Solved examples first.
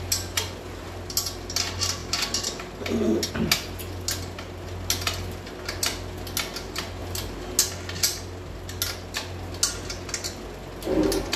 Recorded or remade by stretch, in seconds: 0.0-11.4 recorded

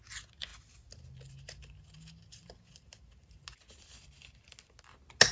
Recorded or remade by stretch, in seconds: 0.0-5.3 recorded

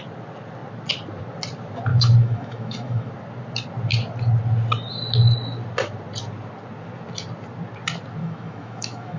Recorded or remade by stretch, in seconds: 0.0-1.9 recorded; 1.9-3.1 remade; 3.1-8.2 recorded; 8.2-9.2 remade